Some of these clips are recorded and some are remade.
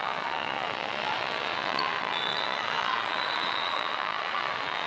remade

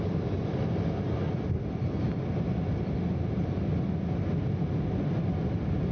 recorded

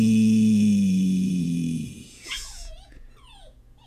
remade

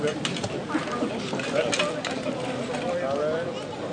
recorded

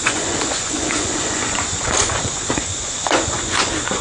remade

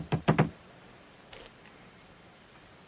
recorded